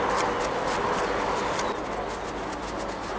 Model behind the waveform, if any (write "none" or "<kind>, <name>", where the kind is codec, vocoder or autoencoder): none